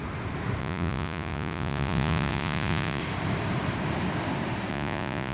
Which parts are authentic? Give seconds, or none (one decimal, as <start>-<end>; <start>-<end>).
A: 0.0-0.6; 3.0-4.7